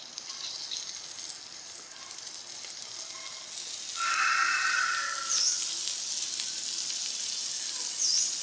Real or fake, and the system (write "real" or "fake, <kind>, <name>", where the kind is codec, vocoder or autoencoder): real